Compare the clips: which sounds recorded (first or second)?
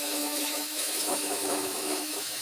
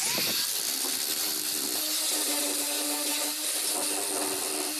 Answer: second